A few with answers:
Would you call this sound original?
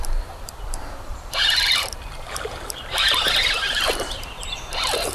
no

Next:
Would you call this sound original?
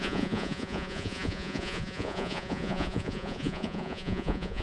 no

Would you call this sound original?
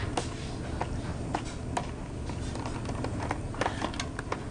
yes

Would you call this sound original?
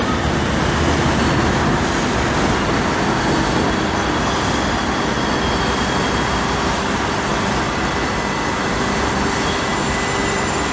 yes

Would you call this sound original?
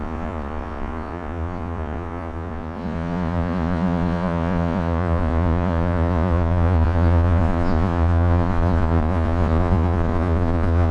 no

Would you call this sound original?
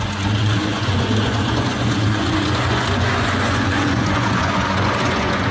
no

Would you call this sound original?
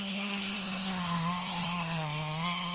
no